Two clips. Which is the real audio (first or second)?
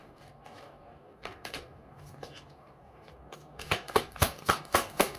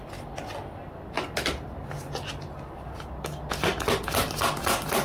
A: second